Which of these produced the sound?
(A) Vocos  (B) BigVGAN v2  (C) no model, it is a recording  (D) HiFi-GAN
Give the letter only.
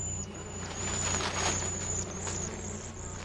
B